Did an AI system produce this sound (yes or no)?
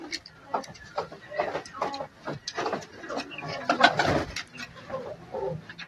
no